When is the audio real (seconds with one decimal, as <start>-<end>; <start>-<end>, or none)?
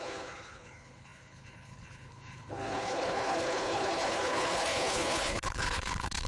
none